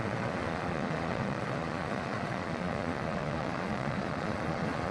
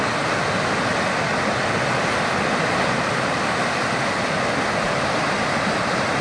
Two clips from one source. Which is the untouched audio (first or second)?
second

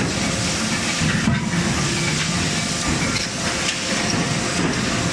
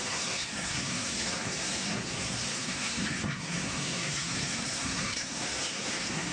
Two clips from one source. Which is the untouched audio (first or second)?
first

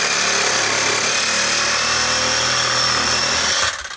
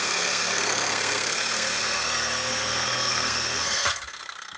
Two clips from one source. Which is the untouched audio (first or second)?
first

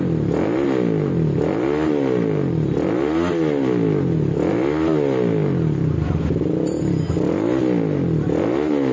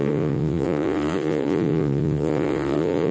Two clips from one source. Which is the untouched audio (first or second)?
first